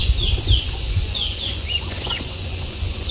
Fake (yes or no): yes